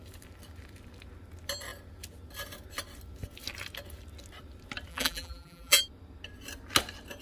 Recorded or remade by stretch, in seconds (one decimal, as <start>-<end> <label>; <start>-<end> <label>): 0.0-4.9 recorded; 4.9-5.8 remade; 5.8-7.2 recorded